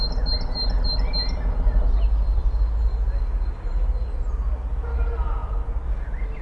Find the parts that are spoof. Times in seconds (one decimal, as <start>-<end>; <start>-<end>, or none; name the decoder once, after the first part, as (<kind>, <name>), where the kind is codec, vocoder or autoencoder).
none

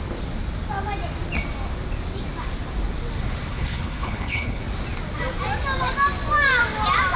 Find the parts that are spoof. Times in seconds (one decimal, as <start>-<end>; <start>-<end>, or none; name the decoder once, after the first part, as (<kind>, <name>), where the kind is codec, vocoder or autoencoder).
3.5-4.6 (codec, HILCodec)

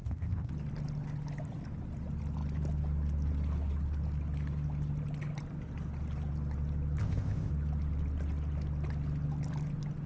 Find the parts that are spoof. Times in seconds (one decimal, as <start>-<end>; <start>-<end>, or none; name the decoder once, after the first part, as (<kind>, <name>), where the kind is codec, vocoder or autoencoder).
0.0-0.5 (codec, ZipCodec); 7.0-7.5

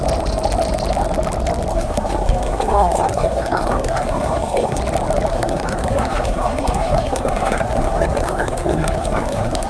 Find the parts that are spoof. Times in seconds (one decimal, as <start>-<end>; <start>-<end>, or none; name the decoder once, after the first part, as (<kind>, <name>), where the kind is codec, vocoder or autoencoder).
1.7-4.8 (codec, SNAC); 5.3-9.7

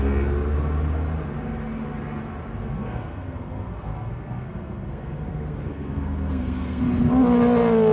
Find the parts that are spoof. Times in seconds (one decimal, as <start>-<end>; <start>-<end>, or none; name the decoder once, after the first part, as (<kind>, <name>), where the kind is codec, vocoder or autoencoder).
2.6-6.8 (codec, SNAC)

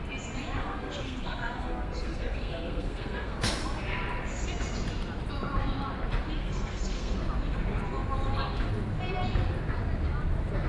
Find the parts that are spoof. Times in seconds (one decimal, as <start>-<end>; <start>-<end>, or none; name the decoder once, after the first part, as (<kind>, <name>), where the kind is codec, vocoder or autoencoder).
0.6-3.6 (codec, SNAC); 6.4-7.2

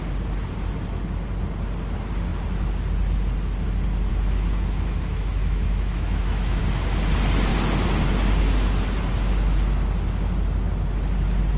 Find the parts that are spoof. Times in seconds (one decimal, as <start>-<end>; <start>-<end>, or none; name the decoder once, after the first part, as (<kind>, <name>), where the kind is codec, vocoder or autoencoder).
4.1-6.6 (autoencoder, DAC-VAE)

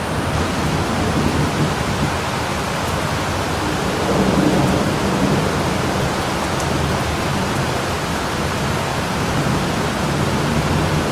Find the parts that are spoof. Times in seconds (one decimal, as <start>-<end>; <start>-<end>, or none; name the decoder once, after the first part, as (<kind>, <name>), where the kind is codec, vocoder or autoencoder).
2.5-3.1 (vocoder, BigVGAN v2); 8.9-9.5